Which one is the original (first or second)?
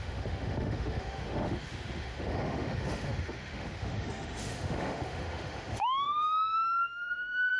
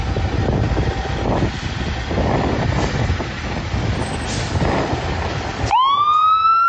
second